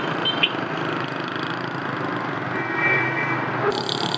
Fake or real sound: real